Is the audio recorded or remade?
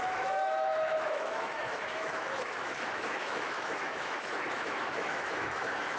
remade